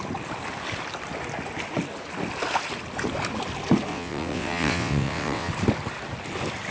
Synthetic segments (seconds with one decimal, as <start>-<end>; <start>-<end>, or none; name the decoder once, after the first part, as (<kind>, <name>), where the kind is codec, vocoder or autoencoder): 3.9-5.5 (vocoder, WaveNeXt)